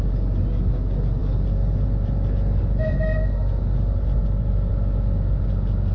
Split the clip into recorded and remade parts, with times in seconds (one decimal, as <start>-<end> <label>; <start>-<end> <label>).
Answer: 0.0-5.9 recorded